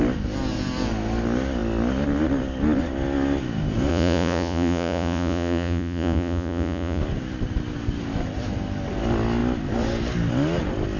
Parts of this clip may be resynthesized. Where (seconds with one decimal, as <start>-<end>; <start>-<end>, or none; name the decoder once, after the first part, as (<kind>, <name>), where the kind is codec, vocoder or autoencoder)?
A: 3.9-7.0 (vocoder, Vocos)